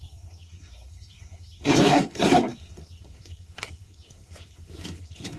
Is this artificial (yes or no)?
yes